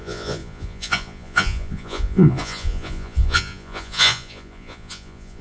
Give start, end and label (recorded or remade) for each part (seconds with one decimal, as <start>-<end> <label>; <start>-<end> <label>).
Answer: 0.0-5.4 remade